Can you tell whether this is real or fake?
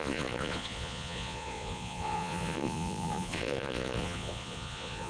fake